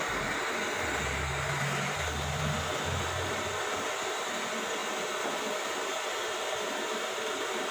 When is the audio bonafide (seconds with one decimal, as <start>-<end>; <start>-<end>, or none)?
0.0-7.7